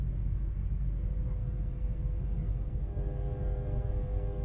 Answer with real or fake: fake